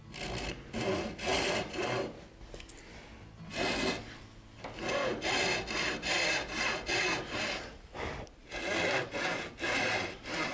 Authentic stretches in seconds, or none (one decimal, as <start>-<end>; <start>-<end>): 0.0-10.5